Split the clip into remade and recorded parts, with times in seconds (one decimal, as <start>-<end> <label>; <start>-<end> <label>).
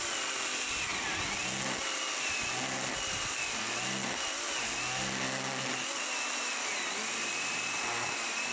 0.0-8.5 recorded